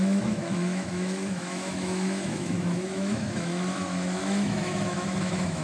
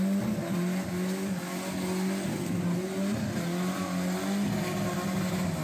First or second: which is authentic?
second